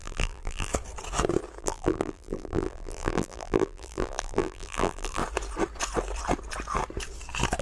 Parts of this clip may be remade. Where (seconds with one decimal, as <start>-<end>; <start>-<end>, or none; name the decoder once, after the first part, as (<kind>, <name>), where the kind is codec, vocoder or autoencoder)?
0.0-0.7 (vocoder, BigVGAN v2); 1.6-5.2